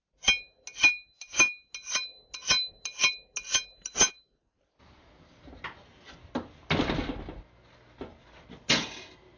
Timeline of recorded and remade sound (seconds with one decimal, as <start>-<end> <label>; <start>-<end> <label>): 0.0-9.4 recorded